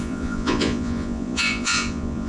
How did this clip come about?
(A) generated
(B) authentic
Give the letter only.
A